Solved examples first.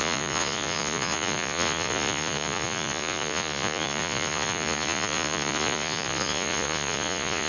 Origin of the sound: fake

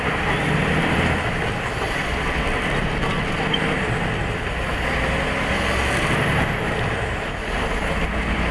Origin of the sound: real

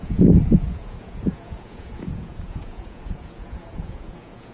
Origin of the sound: fake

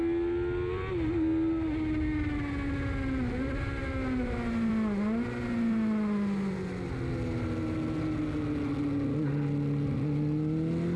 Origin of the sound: real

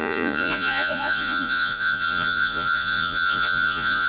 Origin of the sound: fake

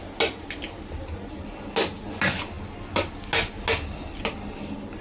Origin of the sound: real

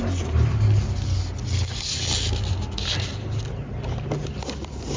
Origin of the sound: real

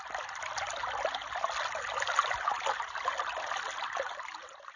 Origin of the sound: real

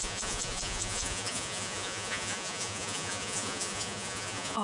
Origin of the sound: fake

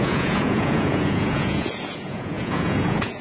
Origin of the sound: fake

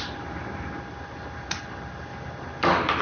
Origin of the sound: real